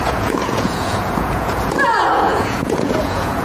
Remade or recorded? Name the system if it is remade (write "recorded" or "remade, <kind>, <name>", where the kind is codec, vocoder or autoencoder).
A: remade, vocoder, Vocos